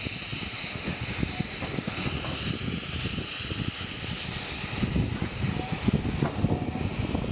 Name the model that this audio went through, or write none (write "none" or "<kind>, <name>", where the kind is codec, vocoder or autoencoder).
none